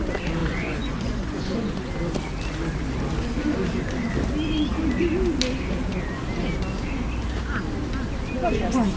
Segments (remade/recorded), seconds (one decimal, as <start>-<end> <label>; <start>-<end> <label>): 0.0-0.4 recorded; 0.4-1.9 remade; 1.9-9.0 recorded